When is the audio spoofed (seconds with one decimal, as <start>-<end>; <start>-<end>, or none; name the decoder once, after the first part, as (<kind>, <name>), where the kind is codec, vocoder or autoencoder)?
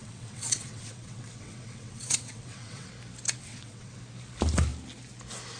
0.0-2.9 (vocoder, WaveNeXt); 3.4-4.0